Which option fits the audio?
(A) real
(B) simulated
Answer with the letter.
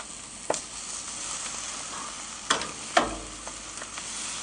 A